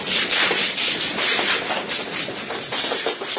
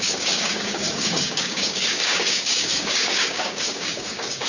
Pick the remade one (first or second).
second